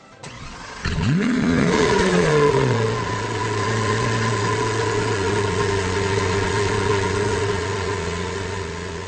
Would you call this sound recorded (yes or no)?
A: no